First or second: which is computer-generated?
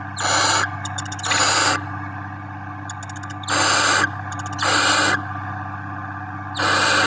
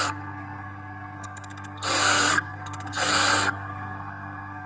second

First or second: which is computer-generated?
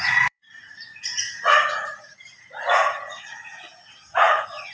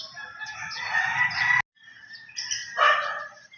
first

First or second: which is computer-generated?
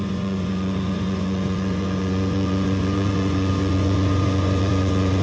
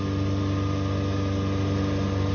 first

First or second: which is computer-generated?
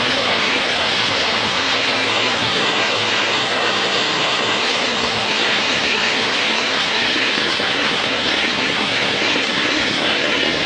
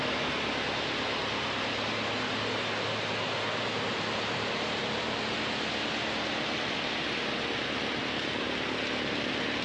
first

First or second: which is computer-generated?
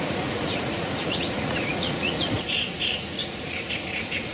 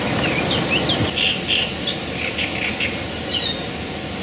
first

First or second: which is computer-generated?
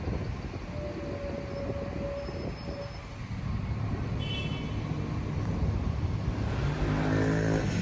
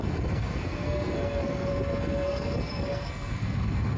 second